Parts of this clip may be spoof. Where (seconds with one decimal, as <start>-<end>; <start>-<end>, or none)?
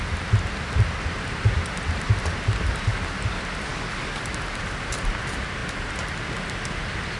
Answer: 3.7-4.2